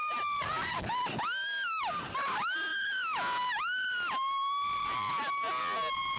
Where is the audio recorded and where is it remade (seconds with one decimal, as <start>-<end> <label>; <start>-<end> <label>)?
0.0-0.7 remade; 0.7-1.4 recorded; 1.4-2.0 remade; 2.0-2.7 recorded; 2.7-5.6 remade; 5.6-6.2 recorded